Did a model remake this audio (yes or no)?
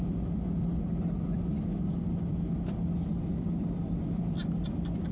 no